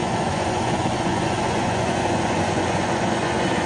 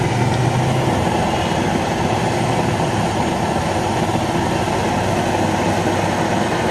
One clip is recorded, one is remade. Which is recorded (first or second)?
second